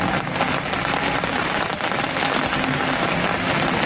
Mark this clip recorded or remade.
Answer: recorded